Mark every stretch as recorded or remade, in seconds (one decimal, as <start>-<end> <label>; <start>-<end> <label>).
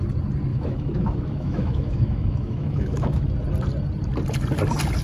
0.0-0.5 recorded; 0.5-3.2 remade; 3.2-5.0 recorded